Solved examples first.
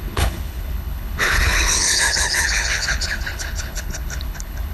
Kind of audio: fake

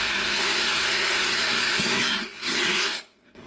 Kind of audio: fake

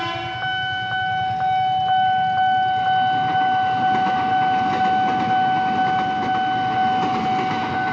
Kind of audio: real